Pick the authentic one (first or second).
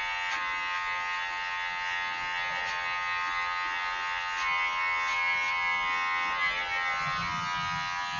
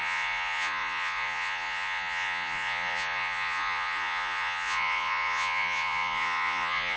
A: first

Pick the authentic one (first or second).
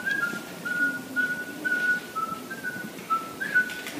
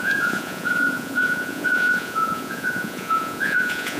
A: first